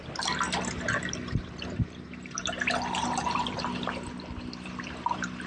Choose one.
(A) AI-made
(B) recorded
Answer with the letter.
B